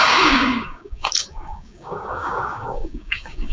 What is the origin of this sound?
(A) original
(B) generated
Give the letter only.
B